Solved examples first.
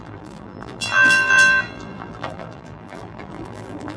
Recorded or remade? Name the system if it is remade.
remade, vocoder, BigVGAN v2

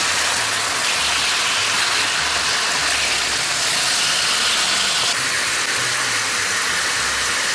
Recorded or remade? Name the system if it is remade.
recorded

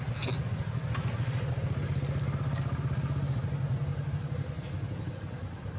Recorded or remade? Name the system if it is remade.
recorded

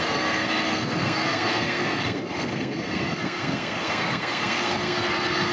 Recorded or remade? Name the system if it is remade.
remade, codec, SNAC